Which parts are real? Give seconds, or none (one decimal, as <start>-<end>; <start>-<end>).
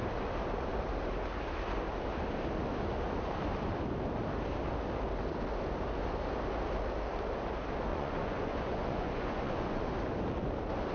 0.0-7.9; 9.8-10.9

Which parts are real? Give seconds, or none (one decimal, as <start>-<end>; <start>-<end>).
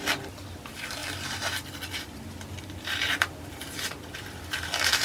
0.0-1.0; 4.0-5.0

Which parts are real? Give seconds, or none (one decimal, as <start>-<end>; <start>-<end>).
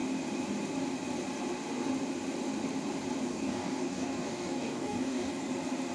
0.0-3.3; 5.3-5.9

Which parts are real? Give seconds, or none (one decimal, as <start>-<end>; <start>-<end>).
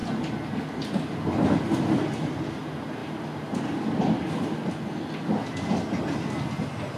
0.0-7.0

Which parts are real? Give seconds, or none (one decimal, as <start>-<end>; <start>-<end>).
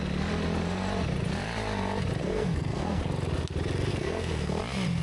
0.0-2.2; 3.0-3.9; 4.6-5.0